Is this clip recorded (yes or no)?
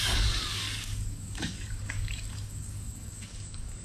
no